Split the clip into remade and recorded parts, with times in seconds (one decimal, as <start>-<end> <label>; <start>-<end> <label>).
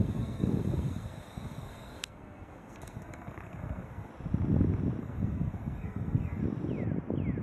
0.0-4.1 remade; 4.1-5.0 recorded; 5.0-6.4 remade; 6.4-7.4 recorded